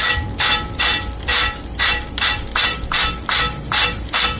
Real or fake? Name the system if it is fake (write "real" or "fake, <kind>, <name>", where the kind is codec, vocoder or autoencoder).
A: real